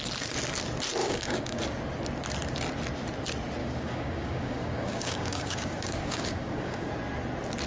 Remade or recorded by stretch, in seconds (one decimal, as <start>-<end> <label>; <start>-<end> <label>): 0.0-1.0 recorded; 1.0-1.6 remade; 1.6-3.6 recorded; 3.6-6.9 remade; 6.9-7.7 recorded